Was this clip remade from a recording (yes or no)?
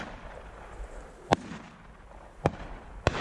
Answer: no